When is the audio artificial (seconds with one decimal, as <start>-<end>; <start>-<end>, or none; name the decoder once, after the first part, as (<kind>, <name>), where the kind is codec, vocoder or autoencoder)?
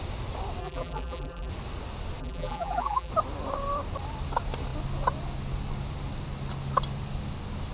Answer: 0.6-1.5 (vocoder, BigVGAN v2); 2.2-3.1